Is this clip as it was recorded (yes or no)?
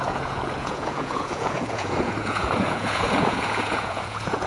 no